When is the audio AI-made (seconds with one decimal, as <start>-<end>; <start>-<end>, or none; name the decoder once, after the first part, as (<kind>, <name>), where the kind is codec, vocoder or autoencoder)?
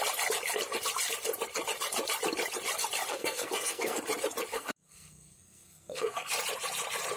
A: 3.1-4.0 (codec, SNAC); 4.5-6.3